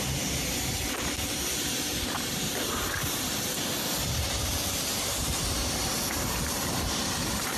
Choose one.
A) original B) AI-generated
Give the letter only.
A